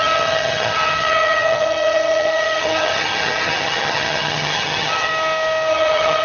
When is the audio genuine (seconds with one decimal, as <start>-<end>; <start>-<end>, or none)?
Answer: 5.1-5.7